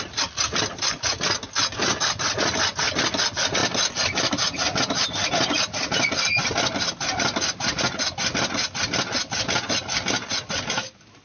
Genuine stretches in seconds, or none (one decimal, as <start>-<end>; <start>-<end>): 0.0-11.2